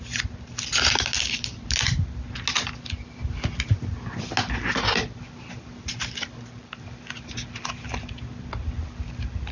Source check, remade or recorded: recorded